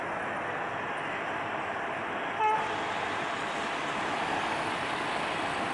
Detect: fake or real real